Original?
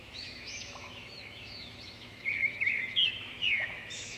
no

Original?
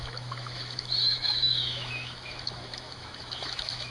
no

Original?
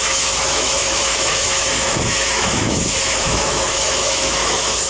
no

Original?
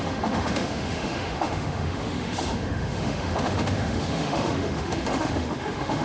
no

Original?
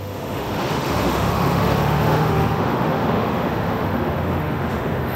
no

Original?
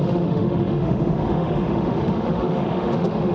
no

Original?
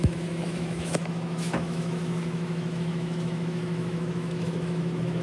no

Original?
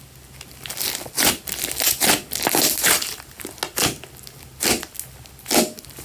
yes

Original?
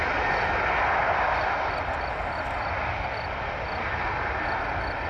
yes